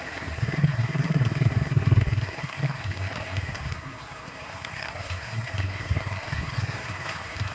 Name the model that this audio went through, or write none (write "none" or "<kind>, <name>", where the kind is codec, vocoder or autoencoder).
codec, SNAC